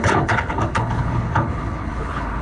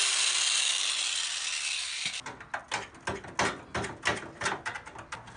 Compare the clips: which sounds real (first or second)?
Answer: second